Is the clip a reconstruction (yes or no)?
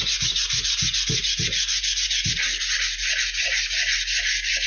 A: no